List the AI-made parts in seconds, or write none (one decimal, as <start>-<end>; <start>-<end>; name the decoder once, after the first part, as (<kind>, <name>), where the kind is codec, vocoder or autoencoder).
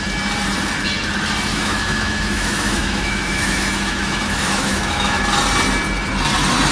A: 1.5-5.2 (autoencoder, DAC-VAE)